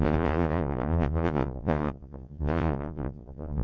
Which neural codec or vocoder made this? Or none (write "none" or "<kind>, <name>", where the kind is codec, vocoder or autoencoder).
vocoder, Vocos